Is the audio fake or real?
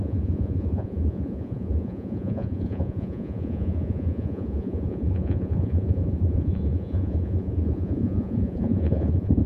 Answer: fake